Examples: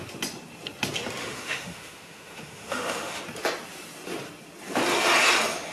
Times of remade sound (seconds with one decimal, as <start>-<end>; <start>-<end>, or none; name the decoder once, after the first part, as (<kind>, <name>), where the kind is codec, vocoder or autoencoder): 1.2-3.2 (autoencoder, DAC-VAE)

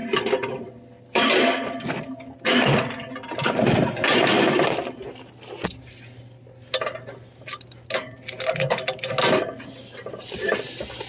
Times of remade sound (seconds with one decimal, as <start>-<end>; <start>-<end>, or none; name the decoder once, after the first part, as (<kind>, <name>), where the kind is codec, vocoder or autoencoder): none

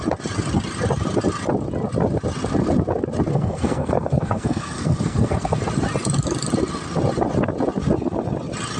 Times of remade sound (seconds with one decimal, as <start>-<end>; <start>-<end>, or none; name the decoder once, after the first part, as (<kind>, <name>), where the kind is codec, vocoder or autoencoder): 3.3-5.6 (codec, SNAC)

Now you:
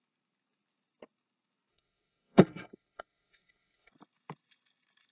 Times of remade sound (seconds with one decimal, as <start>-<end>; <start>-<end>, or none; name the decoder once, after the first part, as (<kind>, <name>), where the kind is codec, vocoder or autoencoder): 1.7-3.9 (codec, SNAC)

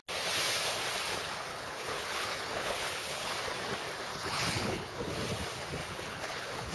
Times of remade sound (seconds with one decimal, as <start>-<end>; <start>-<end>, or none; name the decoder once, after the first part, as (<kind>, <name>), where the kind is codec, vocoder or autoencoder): 1.5-3.3 (codec, HILCodec); 4.1-5.2; 5.8-6.7